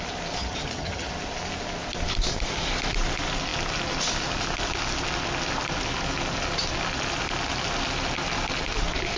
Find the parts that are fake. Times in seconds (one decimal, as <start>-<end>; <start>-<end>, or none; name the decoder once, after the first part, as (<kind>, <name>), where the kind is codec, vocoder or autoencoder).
0.4-1.1 (vocoder, HiFi-GAN)

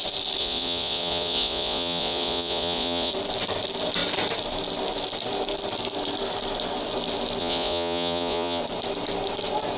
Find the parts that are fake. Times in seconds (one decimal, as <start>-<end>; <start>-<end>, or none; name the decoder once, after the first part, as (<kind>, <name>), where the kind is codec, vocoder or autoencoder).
0.4-3.1 (vocoder, Vocos); 7.4-8.6

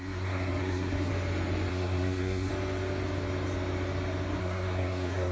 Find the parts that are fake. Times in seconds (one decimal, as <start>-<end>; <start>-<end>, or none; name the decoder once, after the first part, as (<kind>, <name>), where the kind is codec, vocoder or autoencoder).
0.0-1.1 (codec, SNAC); 1.7-2.5; 4.4-5.3

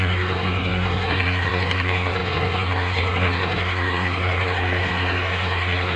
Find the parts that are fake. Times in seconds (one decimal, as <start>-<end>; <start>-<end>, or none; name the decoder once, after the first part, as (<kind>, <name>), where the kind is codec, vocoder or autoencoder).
0.0-6.0 (codec, SNAC)

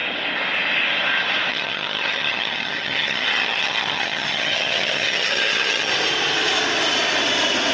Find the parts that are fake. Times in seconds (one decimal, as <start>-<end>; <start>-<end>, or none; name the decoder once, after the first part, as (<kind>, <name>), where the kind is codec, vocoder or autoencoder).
1.5-5.9 (vocoder, HiFi-GAN)

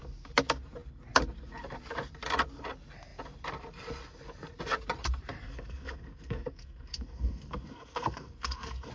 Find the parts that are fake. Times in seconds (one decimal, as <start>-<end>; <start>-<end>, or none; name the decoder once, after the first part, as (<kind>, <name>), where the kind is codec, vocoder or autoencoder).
5.4-8.9 (codec, SNAC)

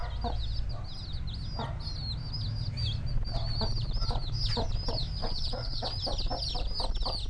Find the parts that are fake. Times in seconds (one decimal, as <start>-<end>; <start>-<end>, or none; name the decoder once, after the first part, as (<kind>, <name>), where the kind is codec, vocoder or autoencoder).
5.2-5.9 (vocoder, WaveNeXt)

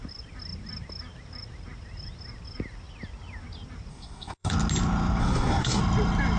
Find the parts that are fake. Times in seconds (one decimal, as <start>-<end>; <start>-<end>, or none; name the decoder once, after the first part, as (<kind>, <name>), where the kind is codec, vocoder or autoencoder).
3.9-4.5 (codec, SNAC); 5.2-5.8